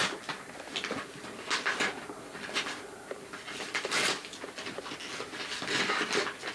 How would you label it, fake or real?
real